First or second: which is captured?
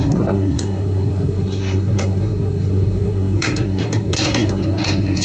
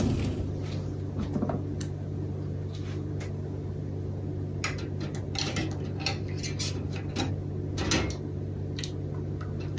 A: second